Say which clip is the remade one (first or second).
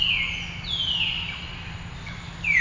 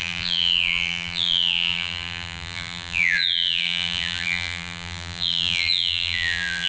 second